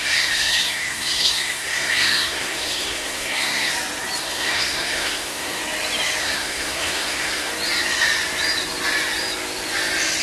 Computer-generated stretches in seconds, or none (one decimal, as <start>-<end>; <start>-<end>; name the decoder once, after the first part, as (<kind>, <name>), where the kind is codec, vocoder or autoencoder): 0.0-3.7 (codec, SNAC); 4.2-5.6; 6.2-7.5